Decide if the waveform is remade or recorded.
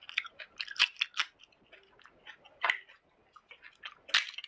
recorded